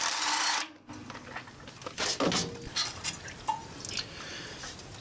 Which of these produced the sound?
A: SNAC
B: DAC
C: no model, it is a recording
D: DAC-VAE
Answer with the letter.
C